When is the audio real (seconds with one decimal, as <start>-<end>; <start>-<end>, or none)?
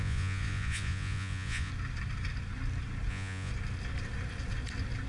1.7-3.1; 3.5-5.1